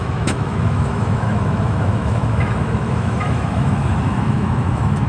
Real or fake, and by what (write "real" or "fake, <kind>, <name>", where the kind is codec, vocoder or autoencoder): fake, autoencoder, DAC-VAE